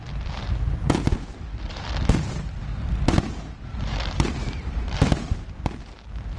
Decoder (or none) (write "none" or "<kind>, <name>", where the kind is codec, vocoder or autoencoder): vocoder, BigVGAN v2